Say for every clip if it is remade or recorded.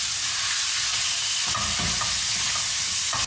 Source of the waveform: recorded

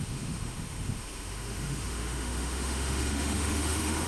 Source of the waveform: remade